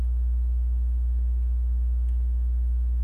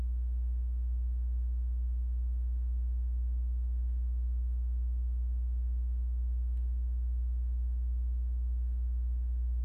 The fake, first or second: second